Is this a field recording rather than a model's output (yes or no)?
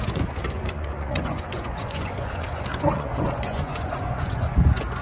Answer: no